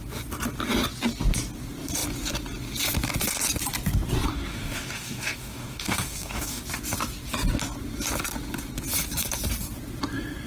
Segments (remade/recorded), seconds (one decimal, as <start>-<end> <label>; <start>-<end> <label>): 0.0-4.3 recorded; 4.3-6.6 remade; 6.6-10.5 recorded